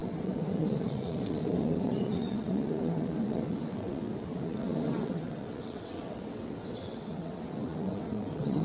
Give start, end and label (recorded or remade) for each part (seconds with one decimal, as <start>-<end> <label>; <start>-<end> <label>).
0.0-8.6 remade